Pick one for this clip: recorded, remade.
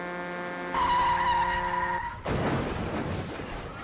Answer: recorded